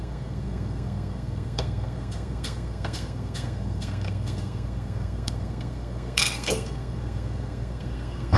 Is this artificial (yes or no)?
yes